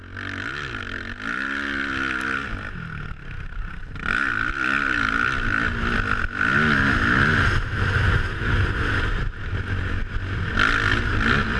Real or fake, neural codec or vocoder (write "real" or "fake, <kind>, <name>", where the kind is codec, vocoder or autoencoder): real